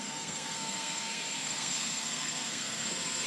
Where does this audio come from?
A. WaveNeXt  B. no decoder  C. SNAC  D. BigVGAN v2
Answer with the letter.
C